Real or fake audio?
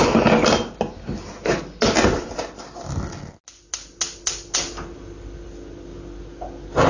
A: real